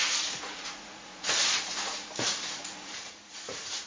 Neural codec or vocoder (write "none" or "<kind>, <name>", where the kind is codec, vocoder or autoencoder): vocoder, Vocos